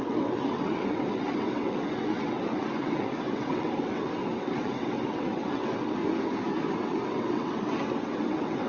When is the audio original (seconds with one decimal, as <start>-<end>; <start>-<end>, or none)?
6.0-6.8